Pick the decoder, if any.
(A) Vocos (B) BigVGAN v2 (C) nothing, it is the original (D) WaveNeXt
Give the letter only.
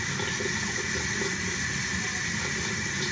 C